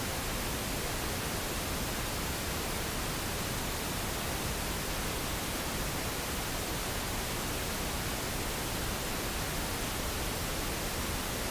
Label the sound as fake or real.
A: real